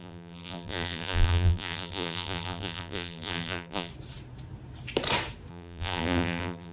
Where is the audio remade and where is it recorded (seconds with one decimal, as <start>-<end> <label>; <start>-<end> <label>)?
0.0-3.9 remade; 3.9-5.5 recorded; 5.5-6.7 remade